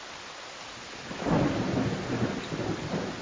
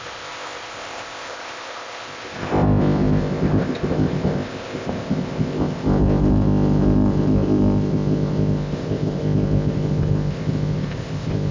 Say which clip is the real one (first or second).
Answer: first